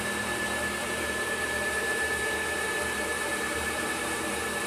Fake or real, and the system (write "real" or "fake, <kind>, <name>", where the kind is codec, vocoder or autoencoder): fake, vocoder, BigVGAN v2